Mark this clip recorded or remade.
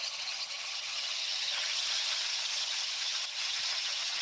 remade